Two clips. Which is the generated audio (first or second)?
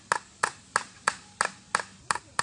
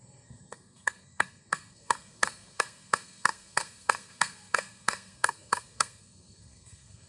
second